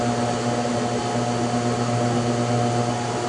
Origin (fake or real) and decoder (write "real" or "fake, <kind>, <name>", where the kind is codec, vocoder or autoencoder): real